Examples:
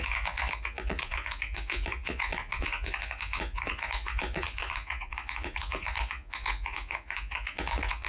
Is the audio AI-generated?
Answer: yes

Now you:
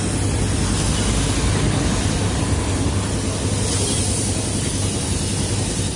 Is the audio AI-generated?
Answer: no